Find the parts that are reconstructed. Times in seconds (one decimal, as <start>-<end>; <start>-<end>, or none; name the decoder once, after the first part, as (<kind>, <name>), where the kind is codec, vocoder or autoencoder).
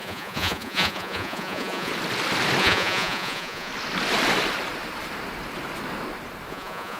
0.0-1.9 (vocoder, Vocos); 2.6-3.7; 6.5-7.0